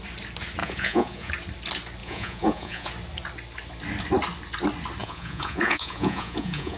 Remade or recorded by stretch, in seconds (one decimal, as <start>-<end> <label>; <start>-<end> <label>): 0.0-0.6 recorded; 0.6-1.3 remade; 1.3-2.0 recorded; 2.0-2.9 remade; 2.9-5.0 recorded; 5.0-6.8 remade